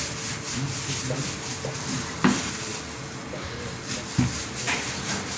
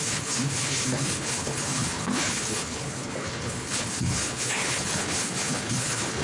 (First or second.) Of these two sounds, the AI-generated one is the second